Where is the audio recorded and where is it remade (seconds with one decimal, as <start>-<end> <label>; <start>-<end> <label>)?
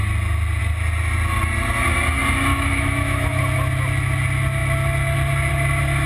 0.0-2.5 recorded; 2.5-3.4 remade; 3.4-6.1 recorded